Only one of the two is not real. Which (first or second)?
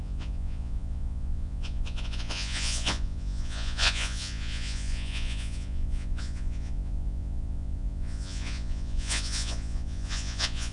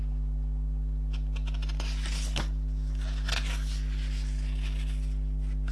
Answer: first